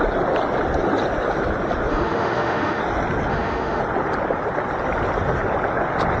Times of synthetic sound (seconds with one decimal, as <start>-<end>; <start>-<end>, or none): 1.9-2.8; 3.3-3.8